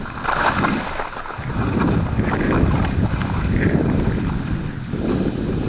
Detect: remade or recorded recorded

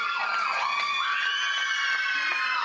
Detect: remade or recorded recorded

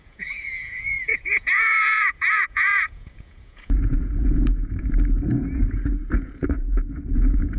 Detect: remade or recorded remade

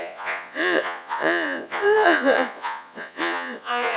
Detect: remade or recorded remade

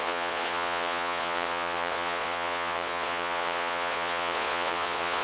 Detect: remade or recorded remade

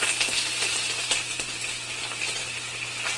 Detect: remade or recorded recorded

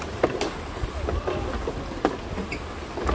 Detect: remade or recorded recorded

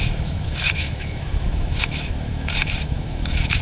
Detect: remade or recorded remade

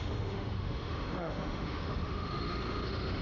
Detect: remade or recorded remade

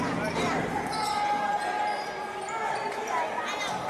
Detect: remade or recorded recorded